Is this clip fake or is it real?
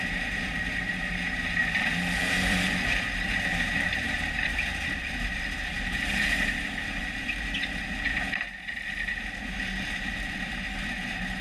fake